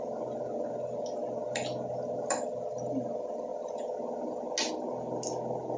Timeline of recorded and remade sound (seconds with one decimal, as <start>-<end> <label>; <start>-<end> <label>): 0.0-5.8 recorded